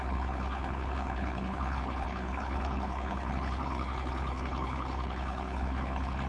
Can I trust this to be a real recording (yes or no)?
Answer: no